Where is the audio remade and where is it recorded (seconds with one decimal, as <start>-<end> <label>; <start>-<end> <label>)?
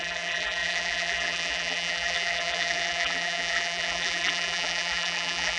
0.0-5.6 remade